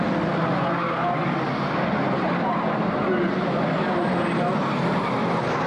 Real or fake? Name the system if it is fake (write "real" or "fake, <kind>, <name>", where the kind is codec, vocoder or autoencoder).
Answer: real